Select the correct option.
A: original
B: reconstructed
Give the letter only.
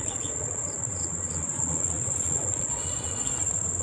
B